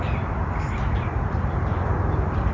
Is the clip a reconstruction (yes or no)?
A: no